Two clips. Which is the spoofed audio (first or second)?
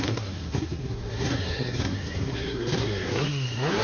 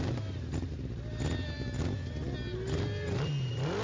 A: first